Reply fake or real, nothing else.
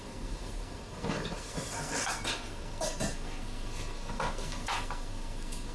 fake